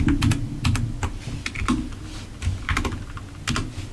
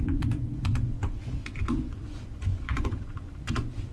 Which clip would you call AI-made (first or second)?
second